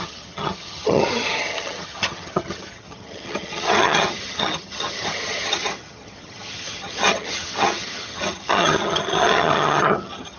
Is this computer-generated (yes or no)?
yes